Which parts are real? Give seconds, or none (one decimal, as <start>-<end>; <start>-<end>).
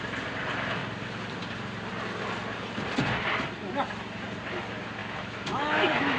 0.0-5.0